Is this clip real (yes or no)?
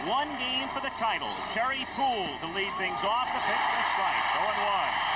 yes